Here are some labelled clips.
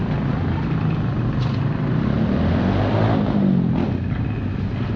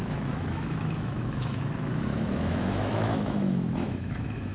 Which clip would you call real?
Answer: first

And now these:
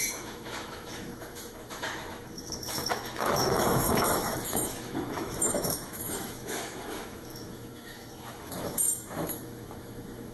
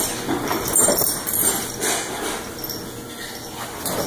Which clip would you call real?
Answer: second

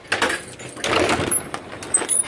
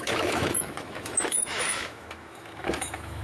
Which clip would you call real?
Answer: first